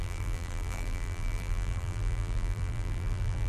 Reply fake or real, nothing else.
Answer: fake